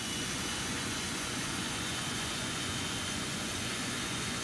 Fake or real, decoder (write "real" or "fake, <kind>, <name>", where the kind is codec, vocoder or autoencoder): fake, vocoder, Vocos